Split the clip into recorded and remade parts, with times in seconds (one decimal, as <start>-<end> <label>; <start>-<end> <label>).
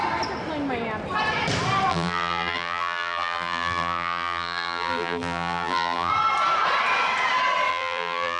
0.0-1.9 recorded; 1.9-6.1 remade; 6.1-7.7 recorded; 7.7-8.4 remade